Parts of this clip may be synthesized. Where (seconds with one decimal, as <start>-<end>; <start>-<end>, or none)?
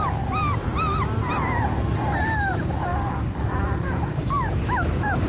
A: none